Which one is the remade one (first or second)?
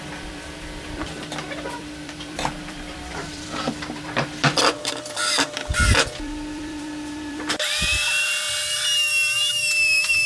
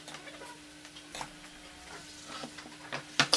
first